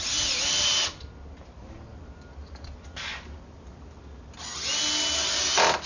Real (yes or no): yes